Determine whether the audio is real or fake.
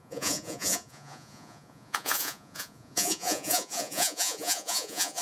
fake